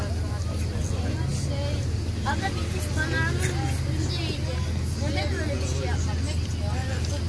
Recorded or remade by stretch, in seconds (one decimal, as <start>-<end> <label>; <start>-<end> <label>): 0.0-7.3 recorded